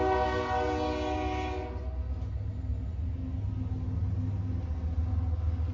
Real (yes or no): yes